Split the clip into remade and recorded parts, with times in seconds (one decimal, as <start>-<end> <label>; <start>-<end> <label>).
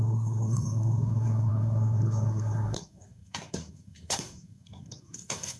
0.0-5.6 remade